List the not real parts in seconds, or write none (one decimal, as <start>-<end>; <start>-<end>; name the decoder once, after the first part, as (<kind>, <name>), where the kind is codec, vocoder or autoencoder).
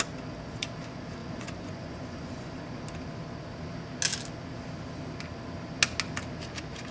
1.2-2.6 (vocoder, Vocos)